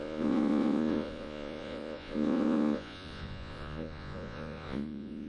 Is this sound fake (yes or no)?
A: yes